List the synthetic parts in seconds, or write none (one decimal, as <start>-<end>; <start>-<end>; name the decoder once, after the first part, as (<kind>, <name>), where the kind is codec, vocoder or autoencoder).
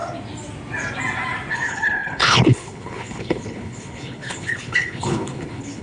1.5-5.8 (codec, HILCodec)